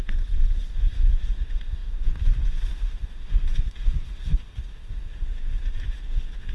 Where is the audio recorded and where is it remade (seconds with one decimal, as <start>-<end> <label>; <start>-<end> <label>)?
0.0-6.5 remade

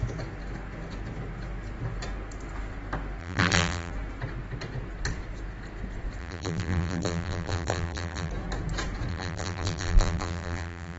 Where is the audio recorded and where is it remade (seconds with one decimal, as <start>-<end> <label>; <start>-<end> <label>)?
0.0-3.2 recorded; 3.2-3.9 remade; 3.9-6.2 recorded; 6.2-8.3 remade; 8.3-9.1 recorded; 9.1-11.0 remade

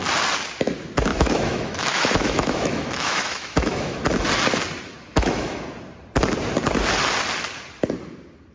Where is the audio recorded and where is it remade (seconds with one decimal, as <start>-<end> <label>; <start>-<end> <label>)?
0.0-1.1 recorded; 1.1-4.0 remade; 4.0-5.1 recorded; 5.1-5.6 remade; 5.6-8.5 recorded